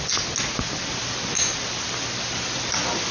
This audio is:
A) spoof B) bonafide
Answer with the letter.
B